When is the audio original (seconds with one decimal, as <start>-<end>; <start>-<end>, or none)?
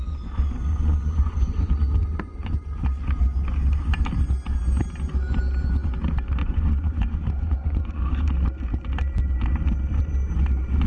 0.0-0.7; 2.8-6.4; 8.0-10.9